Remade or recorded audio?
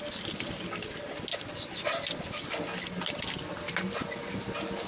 recorded